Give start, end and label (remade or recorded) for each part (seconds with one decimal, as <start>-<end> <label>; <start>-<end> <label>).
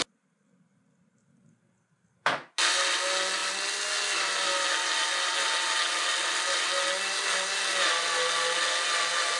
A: 0.0-9.4 recorded